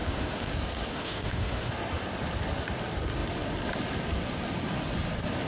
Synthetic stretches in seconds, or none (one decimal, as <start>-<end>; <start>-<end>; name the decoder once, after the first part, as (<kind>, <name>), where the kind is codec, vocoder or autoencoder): 0.0-0.5 (autoencoder, DAC-VAE); 0.9-1.7

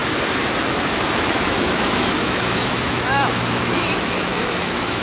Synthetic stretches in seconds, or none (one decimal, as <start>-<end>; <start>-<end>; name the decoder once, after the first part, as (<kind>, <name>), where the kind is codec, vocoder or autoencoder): 0.6-5.0 (autoencoder, DAC-VAE)

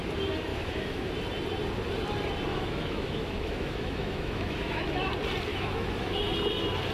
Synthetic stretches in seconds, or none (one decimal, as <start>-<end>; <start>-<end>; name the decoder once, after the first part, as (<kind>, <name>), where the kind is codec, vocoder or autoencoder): 0.5-1.1 (autoencoder, DAC-VAE); 2.5-5.1; 5.5-6.2

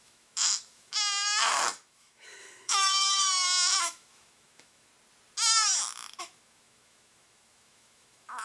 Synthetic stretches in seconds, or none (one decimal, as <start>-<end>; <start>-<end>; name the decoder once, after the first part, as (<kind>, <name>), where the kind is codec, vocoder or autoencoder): 0.0-4.9 (autoencoder, DAC-VAE); 6.2-8.4

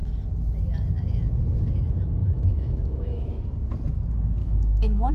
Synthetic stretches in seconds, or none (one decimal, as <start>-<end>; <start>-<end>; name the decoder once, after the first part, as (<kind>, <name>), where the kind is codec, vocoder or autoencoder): 2.2-3.3 (autoencoder, DAC-VAE); 4.4-5.1

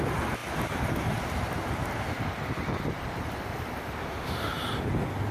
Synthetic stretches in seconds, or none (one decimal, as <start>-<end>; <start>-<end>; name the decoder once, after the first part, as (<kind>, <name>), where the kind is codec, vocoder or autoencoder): 4.0-4.5 (autoencoder, DAC-VAE)

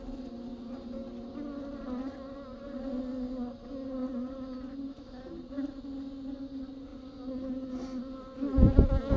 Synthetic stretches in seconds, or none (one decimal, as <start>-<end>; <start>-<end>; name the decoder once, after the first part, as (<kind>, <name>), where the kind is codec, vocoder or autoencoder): none

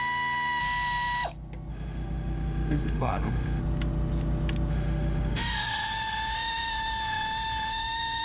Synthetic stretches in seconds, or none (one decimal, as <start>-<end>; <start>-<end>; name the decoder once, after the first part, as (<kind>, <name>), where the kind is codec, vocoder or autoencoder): 0.0-0.6 (autoencoder, DAC-VAE); 1.7-3.6; 4.7-8.2